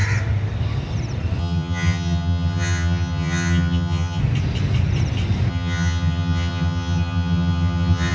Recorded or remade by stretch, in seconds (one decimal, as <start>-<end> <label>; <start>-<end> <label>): 0.0-1.4 recorded; 1.4-4.2 remade; 4.2-5.5 recorded; 5.5-8.1 remade